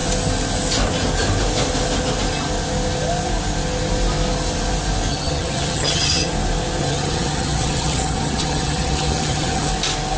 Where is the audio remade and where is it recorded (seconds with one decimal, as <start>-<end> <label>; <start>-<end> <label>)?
0.0-5.1 recorded; 5.1-6.3 remade; 6.3-6.8 recorded; 6.8-9.7 remade; 9.7-10.2 recorded